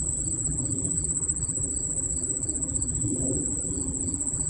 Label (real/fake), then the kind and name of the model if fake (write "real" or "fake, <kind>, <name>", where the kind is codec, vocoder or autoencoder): fake, vocoder, BigVGAN v2